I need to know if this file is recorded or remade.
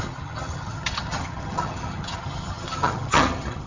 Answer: remade